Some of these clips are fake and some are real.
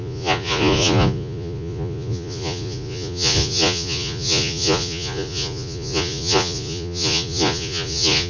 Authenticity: fake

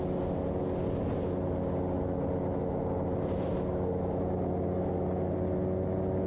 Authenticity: real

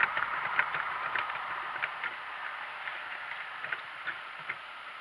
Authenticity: real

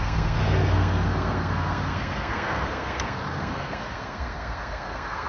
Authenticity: fake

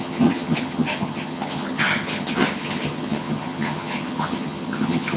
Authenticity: fake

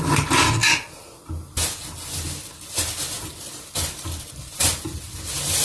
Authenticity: real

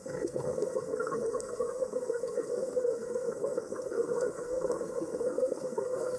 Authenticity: fake